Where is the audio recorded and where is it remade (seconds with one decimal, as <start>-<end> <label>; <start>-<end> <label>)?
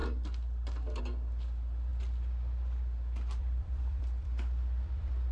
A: 0.0-1.9 remade; 1.9-3.4 recorded; 3.4-5.3 remade